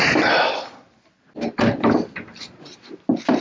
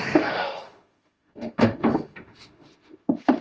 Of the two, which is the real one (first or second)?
first